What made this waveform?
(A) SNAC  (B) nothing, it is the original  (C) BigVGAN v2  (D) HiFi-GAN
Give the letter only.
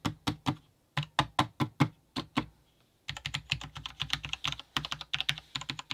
B